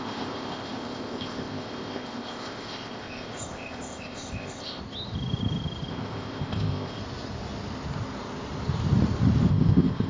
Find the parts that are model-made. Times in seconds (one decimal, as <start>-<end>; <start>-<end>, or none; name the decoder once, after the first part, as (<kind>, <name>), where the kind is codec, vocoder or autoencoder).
0.0-4.8 (codec, ZipCodec); 5.9-7.0; 9.5-10.1